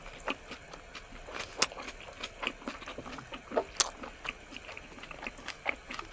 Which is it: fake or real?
real